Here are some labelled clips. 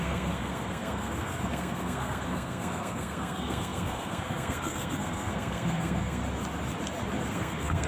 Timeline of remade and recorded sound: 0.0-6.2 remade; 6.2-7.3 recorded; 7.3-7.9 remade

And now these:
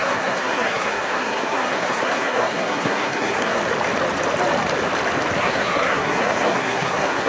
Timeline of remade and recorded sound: 0.0-3.6 remade; 3.6-5.4 recorded; 5.4-7.3 remade

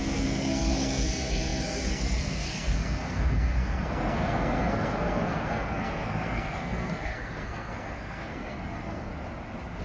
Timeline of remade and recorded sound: 0.0-9.1 remade; 9.1-9.8 recorded

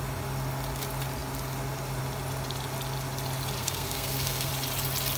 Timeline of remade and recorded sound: 0.0-3.6 recorded; 3.6-4.5 remade; 4.5-5.2 recorded

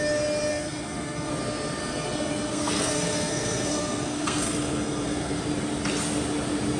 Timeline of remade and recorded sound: 0.0-0.5 recorded; 0.5-1.3 remade; 1.3-1.8 recorded; 1.8-5.4 remade; 5.4-6.8 recorded

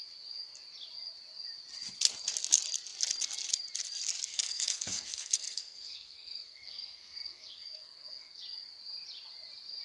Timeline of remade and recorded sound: 0.0-4.3 recorded; 4.3-8.4 remade; 8.4-9.8 recorded

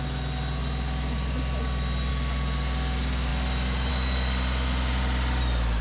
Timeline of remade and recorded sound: 0.0-5.8 recorded